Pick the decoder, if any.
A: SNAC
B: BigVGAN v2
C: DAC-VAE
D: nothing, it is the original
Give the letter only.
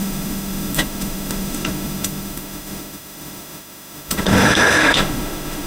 C